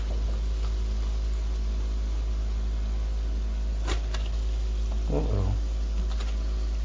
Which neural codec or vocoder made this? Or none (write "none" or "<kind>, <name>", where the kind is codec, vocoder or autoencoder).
none